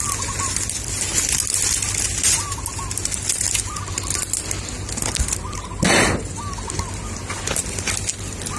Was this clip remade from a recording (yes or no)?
no